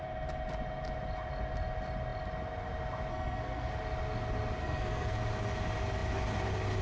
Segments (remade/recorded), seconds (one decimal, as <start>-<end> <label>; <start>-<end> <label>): 0.0-3.1 recorded; 3.1-3.7 remade; 3.7-4.6 recorded; 4.6-5.2 remade; 5.2-6.8 recorded